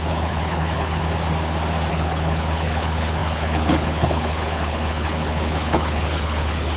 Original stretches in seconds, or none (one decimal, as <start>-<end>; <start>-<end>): 1.0-1.9